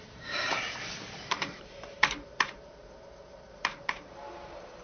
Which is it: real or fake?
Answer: fake